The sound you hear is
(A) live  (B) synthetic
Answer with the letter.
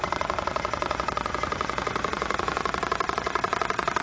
B